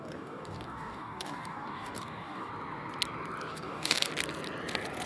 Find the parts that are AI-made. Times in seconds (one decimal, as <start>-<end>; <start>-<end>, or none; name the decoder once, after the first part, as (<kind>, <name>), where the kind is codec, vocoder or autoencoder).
0.0-2.5 (codec, DAC); 3.5-4.1